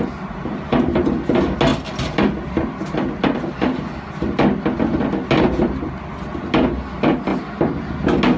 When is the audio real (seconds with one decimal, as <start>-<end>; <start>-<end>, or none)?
0.0-8.4